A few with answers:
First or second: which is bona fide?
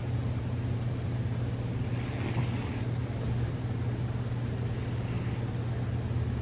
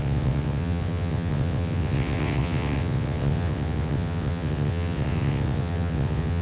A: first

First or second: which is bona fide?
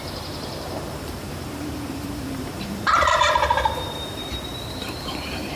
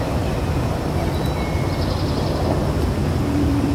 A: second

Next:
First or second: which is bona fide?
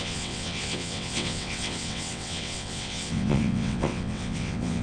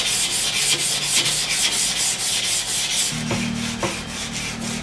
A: second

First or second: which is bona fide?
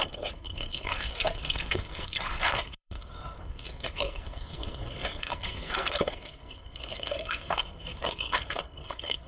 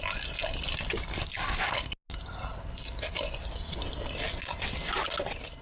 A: second